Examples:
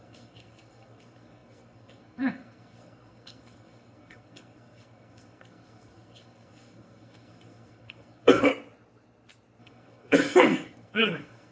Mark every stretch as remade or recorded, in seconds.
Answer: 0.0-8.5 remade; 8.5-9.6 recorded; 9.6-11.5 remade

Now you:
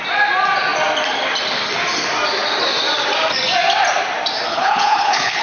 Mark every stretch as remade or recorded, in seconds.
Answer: 0.0-4.5 recorded; 4.5-5.4 remade

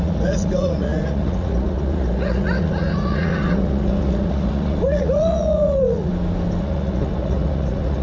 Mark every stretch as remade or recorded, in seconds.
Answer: 0.0-6.1 remade; 6.1-6.6 recorded; 6.6-8.0 remade

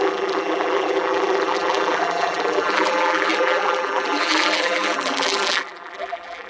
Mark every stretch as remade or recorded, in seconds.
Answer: 0.0-6.5 remade

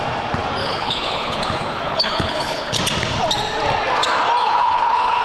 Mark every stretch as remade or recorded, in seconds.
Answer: 0.0-0.6 recorded; 0.6-2.8 remade; 2.8-4.4 recorded; 4.4-5.2 remade

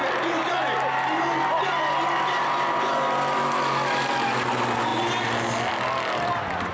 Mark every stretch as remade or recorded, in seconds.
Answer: 0.0-6.7 recorded

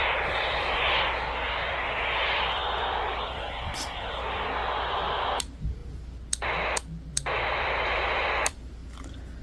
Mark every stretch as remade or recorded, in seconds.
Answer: 0.0-5.8 remade; 5.8-7.1 recorded; 7.1-8.8 remade; 8.8-9.4 recorded